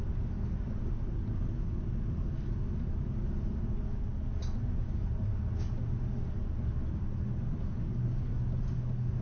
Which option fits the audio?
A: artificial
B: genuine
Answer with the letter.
B